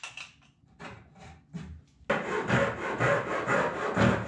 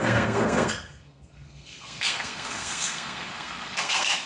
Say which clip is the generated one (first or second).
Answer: second